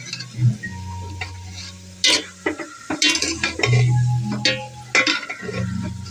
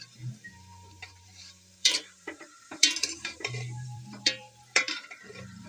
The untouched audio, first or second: first